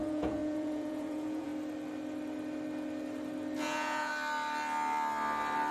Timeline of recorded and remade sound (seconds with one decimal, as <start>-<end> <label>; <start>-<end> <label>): 0.0-1.5 remade; 1.5-3.6 recorded; 3.6-4.1 remade; 4.1-5.7 recorded